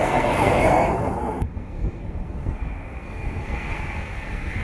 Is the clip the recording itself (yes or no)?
no